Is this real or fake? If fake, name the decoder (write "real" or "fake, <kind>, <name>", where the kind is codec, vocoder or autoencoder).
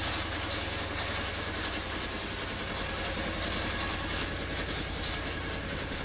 real